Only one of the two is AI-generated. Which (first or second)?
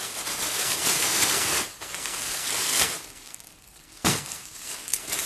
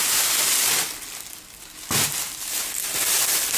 first